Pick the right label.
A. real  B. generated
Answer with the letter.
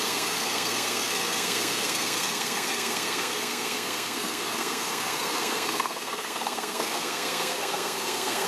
B